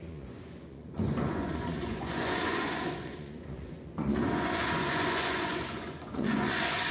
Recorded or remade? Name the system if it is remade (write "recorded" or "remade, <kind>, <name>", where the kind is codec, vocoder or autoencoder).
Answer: remade, vocoder, Vocos